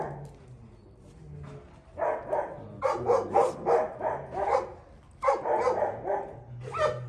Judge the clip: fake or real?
real